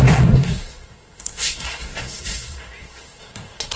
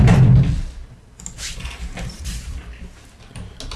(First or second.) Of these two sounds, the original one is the second